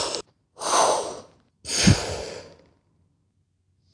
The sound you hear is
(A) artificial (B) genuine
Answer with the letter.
B